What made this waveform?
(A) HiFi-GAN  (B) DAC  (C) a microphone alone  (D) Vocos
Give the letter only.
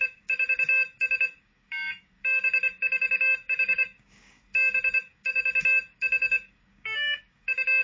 B